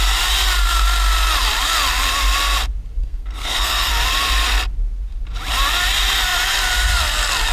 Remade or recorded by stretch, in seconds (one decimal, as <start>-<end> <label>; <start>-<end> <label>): 0.0-3.0 recorded; 3.0-3.9 remade; 3.9-7.5 recorded